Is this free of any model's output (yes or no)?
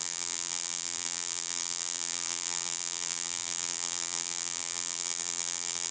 no